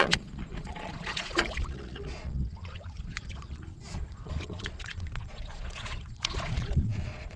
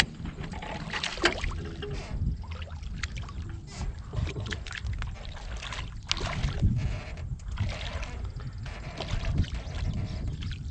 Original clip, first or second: second